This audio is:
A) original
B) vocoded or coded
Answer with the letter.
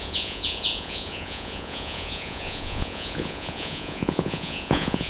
B